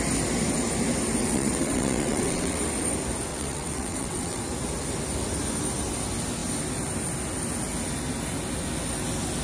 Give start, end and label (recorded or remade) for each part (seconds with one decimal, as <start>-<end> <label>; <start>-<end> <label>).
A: 0.0-1.2 recorded; 1.2-2.6 remade; 2.6-3.3 recorded; 3.3-4.4 remade; 4.4-9.4 recorded